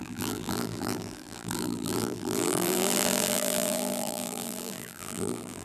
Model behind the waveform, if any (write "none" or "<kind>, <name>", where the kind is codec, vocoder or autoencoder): vocoder, BigVGAN v2